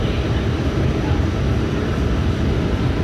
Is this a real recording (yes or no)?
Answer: yes